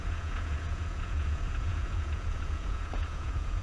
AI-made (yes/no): yes